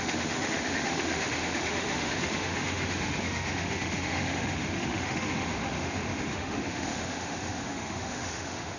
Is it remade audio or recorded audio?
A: remade